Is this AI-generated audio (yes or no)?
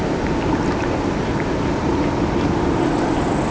no